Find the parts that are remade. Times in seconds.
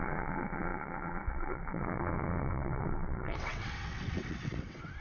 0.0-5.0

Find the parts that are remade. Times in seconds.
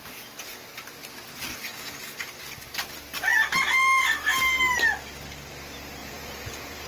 1.7-2.3; 6.0-6.9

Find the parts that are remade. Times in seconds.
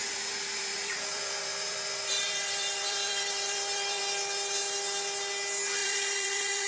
0.0-4.0; 5.8-6.7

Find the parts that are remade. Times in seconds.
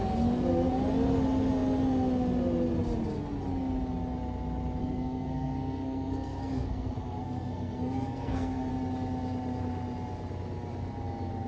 4.8-8.7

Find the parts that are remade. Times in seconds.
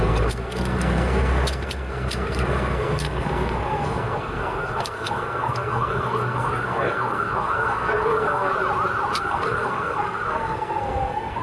0.0-8.5; 9.2-11.4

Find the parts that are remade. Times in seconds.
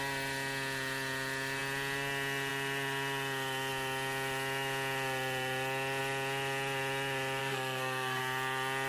7.4-8.2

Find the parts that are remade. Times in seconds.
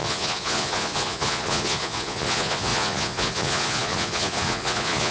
0.0-5.1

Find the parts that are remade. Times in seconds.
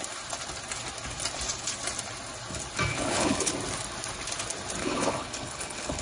2.9-3.5; 4.8-6.0